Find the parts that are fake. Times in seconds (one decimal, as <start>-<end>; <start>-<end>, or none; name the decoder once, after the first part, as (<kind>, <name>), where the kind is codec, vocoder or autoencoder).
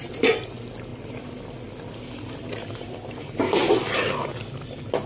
none